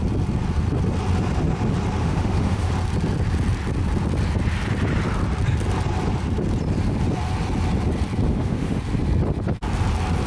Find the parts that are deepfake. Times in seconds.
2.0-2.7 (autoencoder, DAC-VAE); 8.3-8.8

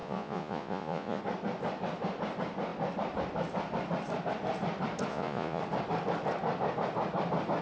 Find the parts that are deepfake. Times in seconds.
0.0-1.2 (vocoder, Vocos); 5.1-5.6

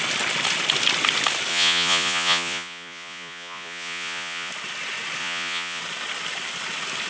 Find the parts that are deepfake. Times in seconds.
1.5-4.5 (vocoder, Vocos); 5.2-5.8